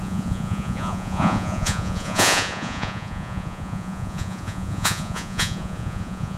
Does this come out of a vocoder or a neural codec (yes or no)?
yes